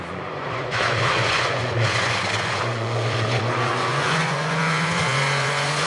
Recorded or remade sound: remade